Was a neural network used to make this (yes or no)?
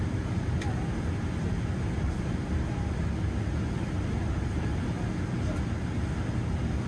no